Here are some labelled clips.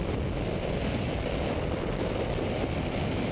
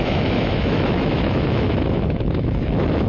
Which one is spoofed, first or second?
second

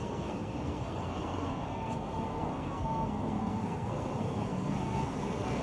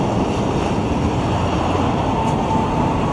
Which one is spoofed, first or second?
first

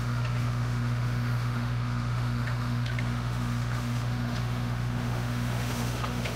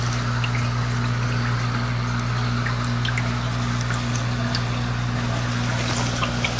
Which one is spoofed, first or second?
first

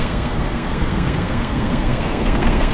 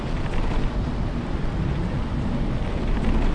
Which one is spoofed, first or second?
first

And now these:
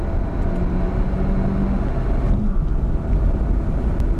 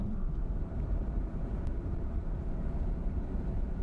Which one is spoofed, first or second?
second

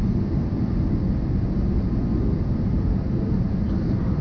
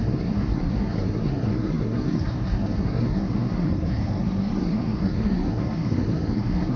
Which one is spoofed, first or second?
second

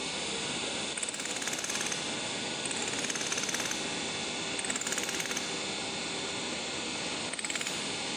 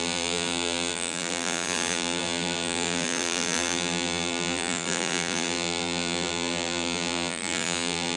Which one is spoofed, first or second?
second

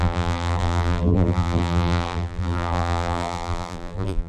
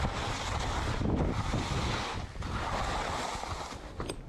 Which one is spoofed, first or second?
first